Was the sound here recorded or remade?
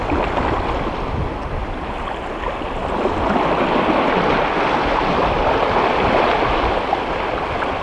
recorded